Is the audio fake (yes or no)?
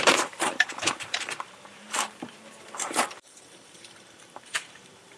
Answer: yes